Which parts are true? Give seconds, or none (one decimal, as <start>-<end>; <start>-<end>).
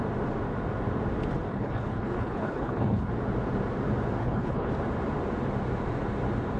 0.0-1.5; 3.1-4.2; 4.7-6.6